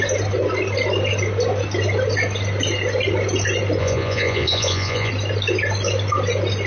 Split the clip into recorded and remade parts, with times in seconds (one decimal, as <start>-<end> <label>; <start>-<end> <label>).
0.0-3.8 recorded; 3.8-5.1 remade; 5.1-6.7 recorded